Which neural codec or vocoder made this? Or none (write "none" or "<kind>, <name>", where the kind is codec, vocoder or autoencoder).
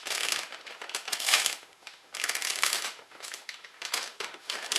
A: autoencoder, DAC-VAE